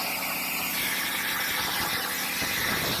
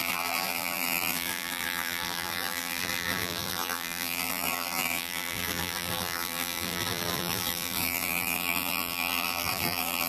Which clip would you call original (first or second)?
first